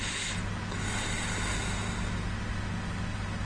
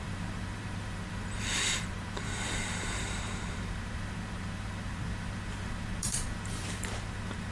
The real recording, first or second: first